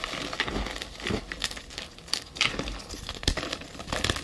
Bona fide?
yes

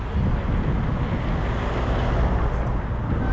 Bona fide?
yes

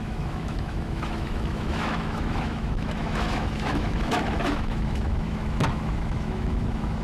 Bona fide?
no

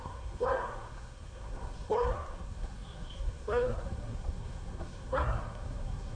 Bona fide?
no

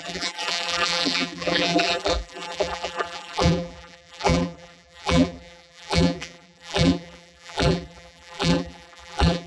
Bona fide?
no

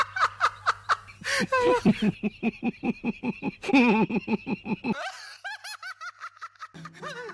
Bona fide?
yes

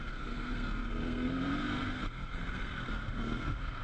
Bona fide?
no